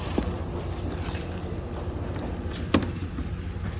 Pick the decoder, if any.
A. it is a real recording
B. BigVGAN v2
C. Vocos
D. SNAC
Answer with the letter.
A